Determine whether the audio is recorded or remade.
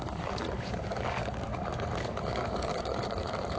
remade